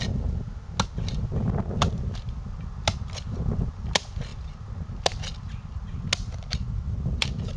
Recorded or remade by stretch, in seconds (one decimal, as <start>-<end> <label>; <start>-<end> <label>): 0.0-7.6 recorded